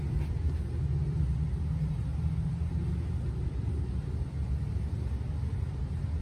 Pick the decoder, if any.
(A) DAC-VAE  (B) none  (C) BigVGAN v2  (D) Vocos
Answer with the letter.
B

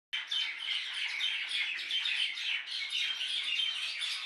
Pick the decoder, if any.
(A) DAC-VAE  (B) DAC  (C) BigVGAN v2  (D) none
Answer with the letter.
D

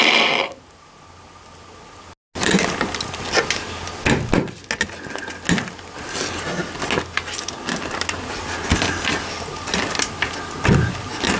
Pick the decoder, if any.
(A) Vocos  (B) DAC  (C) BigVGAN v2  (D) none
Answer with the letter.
D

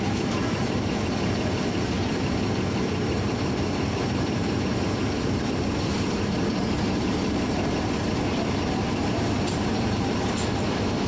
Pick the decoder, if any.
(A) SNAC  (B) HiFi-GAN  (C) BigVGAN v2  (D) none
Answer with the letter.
C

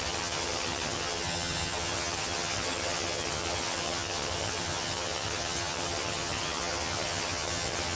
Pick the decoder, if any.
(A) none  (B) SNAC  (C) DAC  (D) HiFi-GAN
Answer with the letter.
D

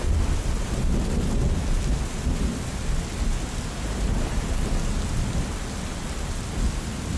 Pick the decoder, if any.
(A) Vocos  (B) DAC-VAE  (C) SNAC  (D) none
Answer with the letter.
D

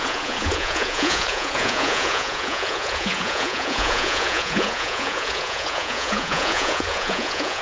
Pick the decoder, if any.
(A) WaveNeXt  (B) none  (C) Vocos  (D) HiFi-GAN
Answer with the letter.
C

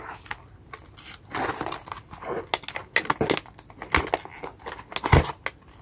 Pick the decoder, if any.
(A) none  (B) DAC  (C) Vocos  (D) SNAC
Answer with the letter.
A